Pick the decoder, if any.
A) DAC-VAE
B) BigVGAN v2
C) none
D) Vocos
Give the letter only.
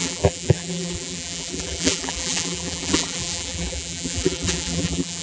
B